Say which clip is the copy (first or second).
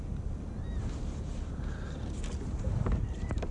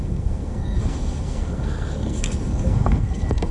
second